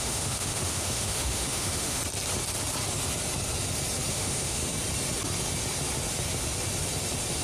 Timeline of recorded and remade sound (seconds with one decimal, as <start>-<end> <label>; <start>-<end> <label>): 0.0-2.0 remade; 2.0-4.1 recorded; 4.1-4.6 remade; 4.6-7.4 recorded